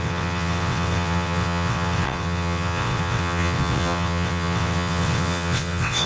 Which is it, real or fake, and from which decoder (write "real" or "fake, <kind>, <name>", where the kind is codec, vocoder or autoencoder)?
fake, vocoder, WaveNeXt